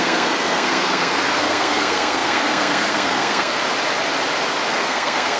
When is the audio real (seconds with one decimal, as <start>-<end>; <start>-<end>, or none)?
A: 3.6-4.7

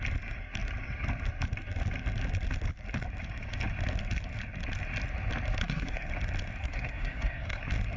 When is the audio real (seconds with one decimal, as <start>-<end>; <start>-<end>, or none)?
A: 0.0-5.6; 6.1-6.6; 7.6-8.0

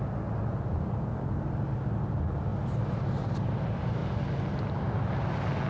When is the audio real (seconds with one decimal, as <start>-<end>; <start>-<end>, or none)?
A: 0.0-5.7